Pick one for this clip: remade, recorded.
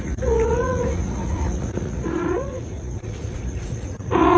remade